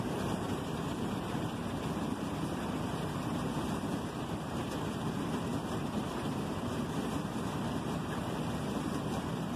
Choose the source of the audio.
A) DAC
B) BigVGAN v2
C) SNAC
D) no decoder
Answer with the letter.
B